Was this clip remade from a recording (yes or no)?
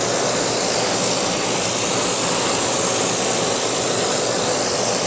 no